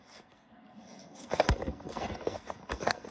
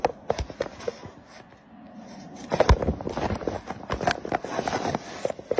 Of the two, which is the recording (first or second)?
second